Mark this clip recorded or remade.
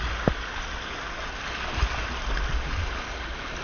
recorded